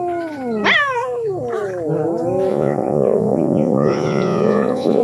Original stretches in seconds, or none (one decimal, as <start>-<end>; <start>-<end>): 0.0-2.5